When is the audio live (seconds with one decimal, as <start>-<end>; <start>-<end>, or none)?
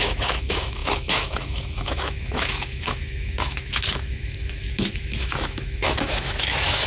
none